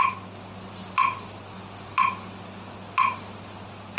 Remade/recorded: recorded